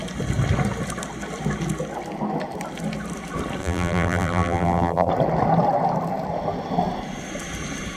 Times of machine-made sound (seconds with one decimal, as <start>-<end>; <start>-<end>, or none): 3.6-5.1